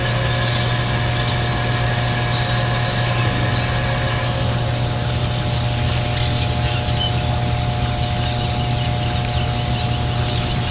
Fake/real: real